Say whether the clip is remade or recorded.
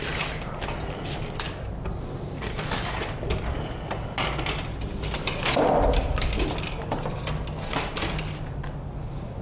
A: recorded